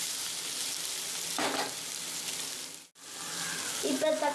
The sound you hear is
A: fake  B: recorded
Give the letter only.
B